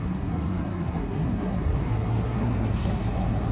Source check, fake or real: fake